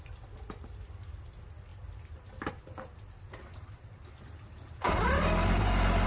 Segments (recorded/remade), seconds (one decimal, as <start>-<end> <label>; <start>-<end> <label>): 0.0-6.1 recorded